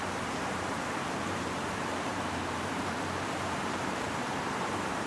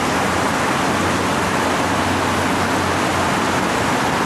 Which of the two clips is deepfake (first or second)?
first